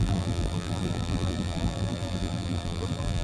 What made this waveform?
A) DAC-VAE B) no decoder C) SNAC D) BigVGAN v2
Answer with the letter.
D